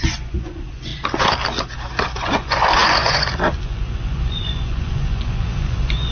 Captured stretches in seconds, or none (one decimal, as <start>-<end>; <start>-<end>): 0.9-2.2